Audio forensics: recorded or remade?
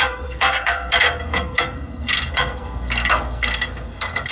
remade